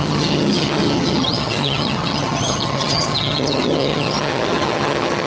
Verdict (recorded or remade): remade